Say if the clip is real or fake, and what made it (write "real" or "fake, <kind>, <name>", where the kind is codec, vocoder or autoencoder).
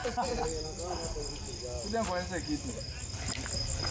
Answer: real